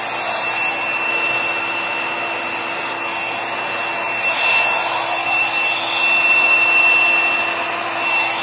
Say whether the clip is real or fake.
real